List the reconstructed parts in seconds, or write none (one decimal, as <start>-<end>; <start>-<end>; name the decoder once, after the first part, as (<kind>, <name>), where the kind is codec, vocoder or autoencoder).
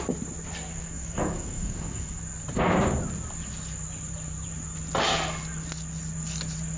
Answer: 0.7-2.2 (codec, DAC)